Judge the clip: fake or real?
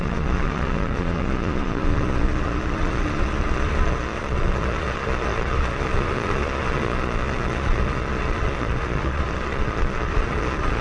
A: fake